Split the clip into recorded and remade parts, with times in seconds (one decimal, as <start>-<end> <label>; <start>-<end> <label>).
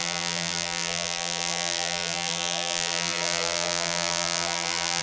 0.0-5.0 remade